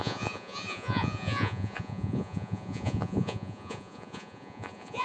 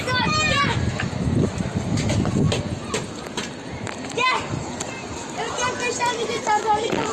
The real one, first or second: second